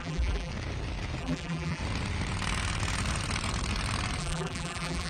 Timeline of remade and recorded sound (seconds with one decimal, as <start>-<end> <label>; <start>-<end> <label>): 0.0-0.5 remade; 0.5-1.2 recorded; 1.2-1.8 remade; 1.8-4.2 recorded; 4.2-5.1 remade